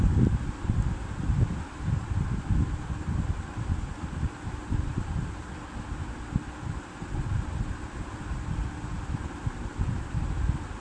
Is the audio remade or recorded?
recorded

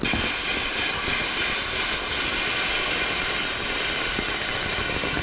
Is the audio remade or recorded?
recorded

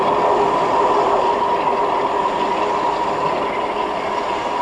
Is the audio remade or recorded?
recorded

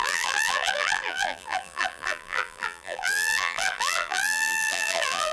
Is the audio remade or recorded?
remade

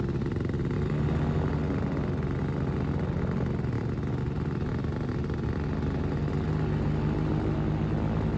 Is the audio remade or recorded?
recorded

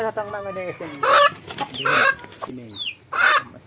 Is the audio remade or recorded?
recorded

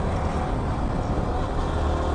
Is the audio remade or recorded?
recorded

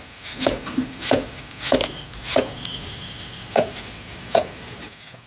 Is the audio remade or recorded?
recorded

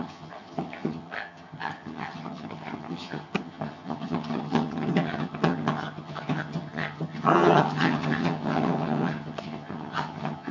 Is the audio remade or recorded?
remade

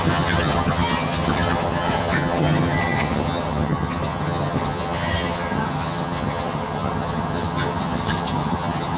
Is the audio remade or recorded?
remade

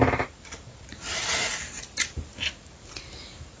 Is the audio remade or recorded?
recorded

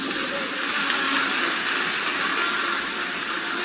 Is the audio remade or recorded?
recorded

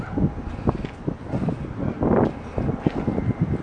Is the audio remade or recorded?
recorded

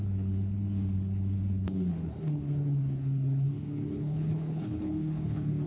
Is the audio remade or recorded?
remade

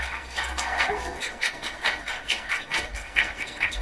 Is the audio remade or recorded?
remade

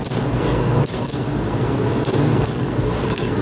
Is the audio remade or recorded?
remade